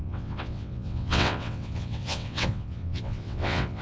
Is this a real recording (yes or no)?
no